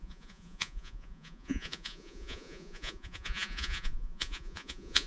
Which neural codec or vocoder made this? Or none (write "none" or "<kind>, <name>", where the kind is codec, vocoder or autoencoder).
vocoder, Vocos